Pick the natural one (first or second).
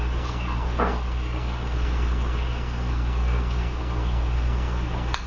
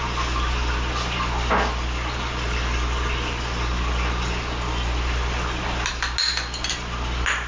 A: second